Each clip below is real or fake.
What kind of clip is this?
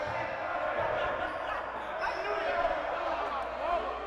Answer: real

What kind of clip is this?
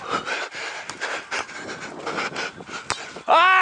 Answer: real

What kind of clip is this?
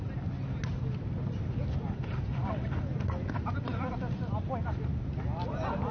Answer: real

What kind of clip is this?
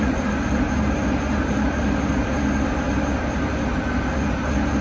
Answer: fake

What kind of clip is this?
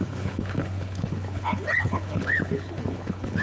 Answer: fake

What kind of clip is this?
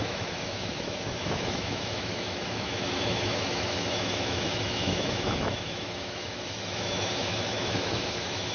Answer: fake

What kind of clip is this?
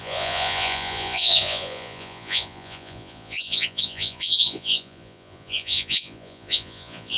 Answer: fake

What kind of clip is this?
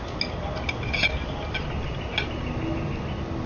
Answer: real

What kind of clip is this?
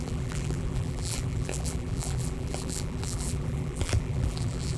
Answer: fake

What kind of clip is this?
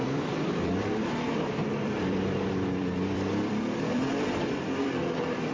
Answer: fake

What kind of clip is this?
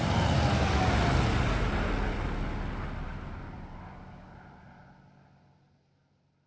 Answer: real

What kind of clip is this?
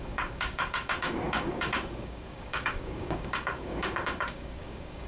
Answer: fake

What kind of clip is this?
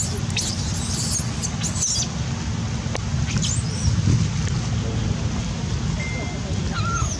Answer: real